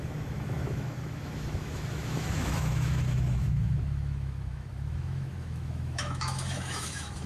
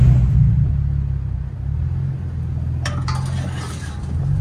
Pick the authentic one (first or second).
second